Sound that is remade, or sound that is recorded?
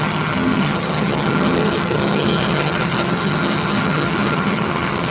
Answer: remade